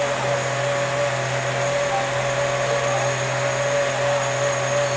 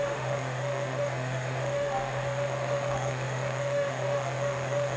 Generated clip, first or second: second